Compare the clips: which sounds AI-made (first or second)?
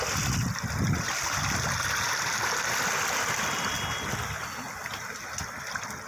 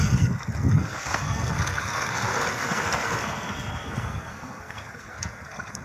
second